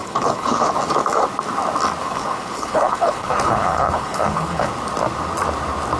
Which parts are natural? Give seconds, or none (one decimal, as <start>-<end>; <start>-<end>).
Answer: 0.7-2.0; 4.7-6.0